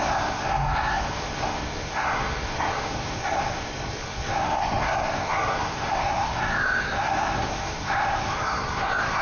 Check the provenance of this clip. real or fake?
fake